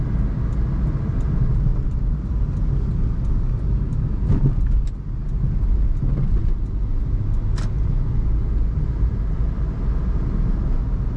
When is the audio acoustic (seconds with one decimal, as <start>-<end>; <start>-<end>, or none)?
0.0-11.2

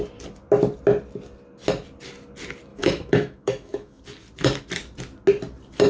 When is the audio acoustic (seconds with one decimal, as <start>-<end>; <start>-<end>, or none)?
0.0-2.7; 4.0-5.9

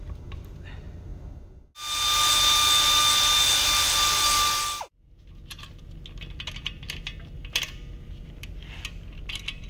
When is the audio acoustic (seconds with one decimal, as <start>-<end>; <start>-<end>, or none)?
0.0-9.7

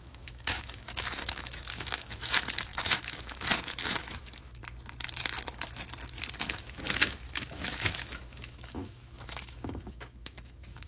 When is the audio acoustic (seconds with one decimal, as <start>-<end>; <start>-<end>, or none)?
4.6-6.4

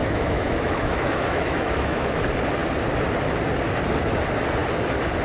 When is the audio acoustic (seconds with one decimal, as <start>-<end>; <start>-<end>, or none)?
2.2-5.2

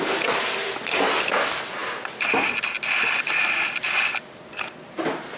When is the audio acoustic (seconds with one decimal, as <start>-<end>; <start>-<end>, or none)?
0.0-5.4

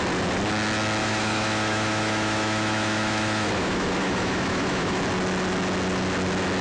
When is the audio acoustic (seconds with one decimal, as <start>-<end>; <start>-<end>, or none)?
0.0-1.0; 5.0-6.6

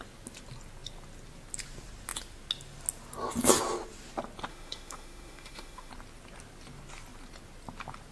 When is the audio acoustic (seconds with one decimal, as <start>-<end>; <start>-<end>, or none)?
0.0-4.5; 5.9-8.1